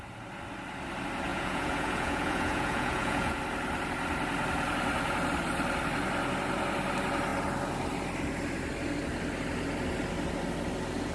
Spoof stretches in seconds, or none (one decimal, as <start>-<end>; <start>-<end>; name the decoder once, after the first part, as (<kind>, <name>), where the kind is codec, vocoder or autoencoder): 1.3-3.4 (vocoder, Vocos)